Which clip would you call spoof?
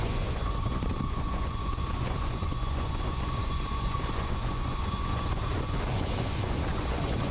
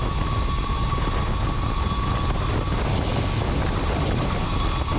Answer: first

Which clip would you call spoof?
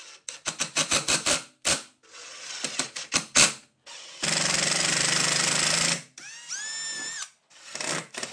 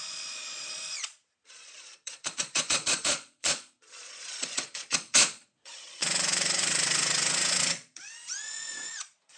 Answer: second